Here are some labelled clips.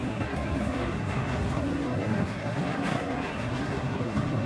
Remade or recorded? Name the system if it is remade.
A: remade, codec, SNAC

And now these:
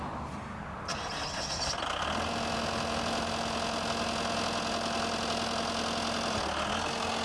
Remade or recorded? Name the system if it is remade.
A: recorded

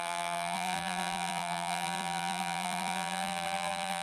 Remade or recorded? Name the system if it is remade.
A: remade, vocoder, BigVGAN v2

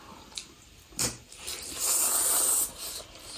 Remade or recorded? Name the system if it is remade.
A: recorded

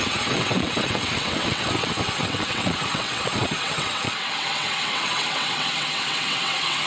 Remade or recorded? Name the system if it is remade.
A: remade, vocoder, WaveNeXt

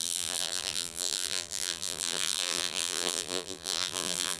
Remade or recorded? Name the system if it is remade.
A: remade, vocoder, BigVGAN v2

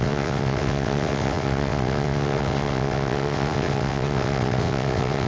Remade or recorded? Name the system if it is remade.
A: remade, vocoder, WaveNeXt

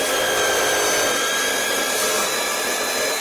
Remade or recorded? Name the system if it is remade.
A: recorded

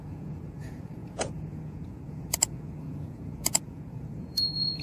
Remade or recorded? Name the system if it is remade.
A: remade, vocoder, Vocos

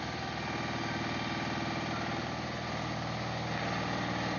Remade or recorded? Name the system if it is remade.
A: recorded